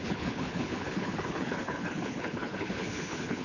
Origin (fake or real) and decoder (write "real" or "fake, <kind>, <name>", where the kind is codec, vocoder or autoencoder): fake, codec, HILCodec